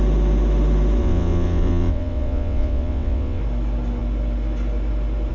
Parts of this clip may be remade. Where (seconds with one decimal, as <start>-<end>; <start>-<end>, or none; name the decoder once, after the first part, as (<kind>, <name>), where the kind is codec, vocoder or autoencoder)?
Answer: 1.0-3.4 (vocoder, WaveNeXt)